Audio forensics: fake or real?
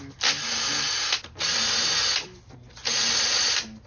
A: real